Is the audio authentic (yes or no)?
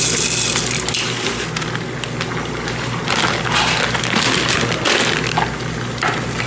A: yes